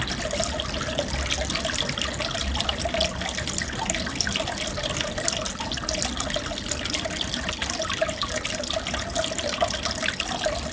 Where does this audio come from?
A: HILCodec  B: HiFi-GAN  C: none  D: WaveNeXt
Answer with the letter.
C